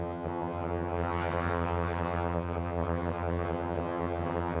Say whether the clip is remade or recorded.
remade